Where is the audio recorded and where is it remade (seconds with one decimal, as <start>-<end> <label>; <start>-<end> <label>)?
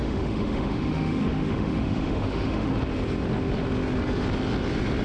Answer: 0.0-2.7 remade; 2.7-5.0 recorded